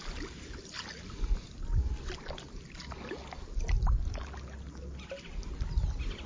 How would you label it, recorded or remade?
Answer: recorded